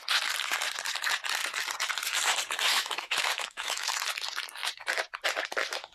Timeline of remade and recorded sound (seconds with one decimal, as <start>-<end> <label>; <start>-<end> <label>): 0.0-2.7 recorded; 2.7-3.9 remade; 3.9-5.9 recorded